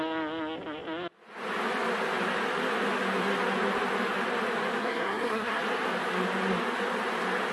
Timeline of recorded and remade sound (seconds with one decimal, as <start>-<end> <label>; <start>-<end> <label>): 0.0-4.8 recorded; 4.8-5.6 remade; 5.6-7.5 recorded